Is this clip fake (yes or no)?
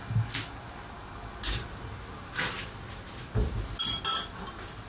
no